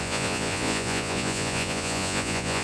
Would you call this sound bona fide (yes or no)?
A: no